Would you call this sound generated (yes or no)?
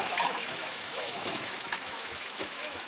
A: yes